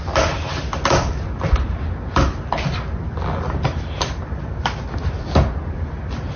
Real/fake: real